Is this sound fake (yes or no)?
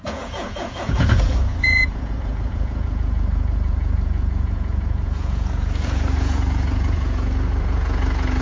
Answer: yes